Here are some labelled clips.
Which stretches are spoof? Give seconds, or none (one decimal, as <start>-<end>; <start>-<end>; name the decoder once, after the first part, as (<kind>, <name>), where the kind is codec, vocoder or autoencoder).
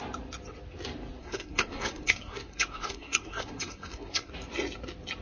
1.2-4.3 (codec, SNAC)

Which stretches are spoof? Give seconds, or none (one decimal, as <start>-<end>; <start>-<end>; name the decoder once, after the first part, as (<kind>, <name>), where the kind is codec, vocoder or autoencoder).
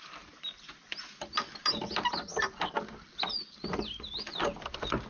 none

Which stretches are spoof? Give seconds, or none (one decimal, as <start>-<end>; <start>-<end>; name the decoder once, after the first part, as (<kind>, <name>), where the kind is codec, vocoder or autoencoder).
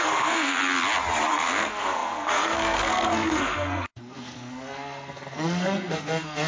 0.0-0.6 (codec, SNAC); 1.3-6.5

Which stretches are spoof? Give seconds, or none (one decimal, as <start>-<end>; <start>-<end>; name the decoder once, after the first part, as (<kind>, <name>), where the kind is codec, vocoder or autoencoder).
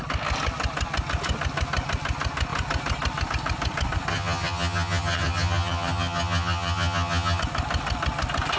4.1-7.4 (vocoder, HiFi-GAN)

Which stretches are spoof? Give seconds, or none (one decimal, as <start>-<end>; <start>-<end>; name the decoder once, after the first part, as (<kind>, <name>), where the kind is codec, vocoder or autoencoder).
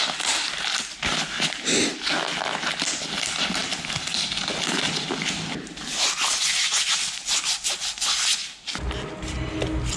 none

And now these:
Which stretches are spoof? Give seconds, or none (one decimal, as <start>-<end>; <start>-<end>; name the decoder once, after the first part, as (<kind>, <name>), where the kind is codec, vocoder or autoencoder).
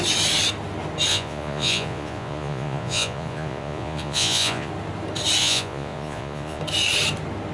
1.1-4.7 (vocoder, Vocos); 5.4-6.6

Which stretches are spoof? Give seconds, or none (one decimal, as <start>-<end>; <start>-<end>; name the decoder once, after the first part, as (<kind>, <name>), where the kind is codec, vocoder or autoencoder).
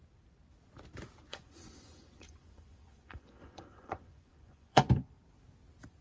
1.3-4.9 (vocoder, Vocos)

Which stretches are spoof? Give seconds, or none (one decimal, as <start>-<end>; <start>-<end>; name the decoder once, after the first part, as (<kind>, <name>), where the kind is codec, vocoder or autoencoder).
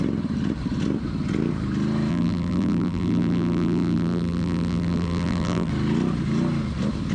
2.1-5.7 (vocoder, BigVGAN v2)